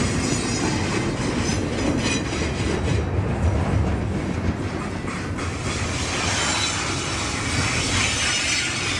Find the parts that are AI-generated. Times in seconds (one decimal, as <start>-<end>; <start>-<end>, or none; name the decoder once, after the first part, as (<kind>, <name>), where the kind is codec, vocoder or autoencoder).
none